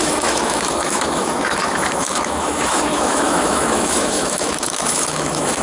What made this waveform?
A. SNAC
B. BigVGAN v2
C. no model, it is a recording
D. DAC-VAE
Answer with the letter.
D